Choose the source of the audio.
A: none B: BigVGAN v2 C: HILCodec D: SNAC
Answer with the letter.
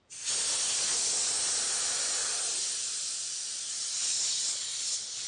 A